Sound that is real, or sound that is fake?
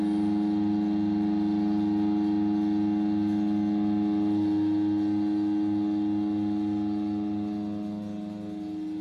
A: real